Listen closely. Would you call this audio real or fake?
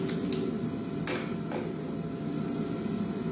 real